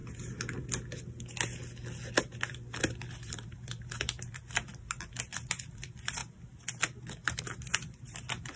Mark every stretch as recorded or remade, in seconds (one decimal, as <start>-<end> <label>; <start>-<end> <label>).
0.0-2.8 recorded; 2.8-6.2 remade; 6.2-7.4 recorded; 7.4-8.6 remade